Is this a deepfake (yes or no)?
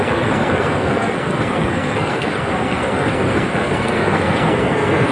yes